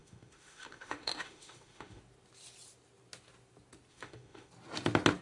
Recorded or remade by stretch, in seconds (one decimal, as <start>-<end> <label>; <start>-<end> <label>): 0.0-2.0 remade; 2.0-3.9 recorded; 3.9-4.5 remade; 4.5-5.2 recorded